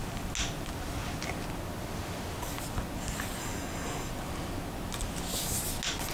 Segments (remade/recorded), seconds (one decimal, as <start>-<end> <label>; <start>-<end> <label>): 0.0-3.4 recorded; 3.4-4.1 remade; 4.1-6.1 recorded